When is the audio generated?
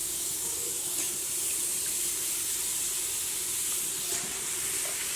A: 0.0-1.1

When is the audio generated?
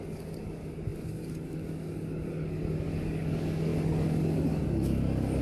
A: 0.0-5.4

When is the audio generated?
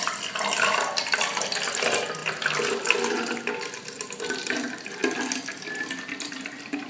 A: none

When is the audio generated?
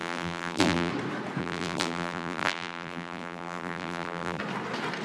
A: 0.0-0.9; 1.4-4.4